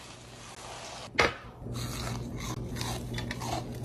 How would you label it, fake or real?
real